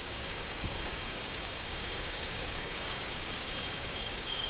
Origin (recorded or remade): remade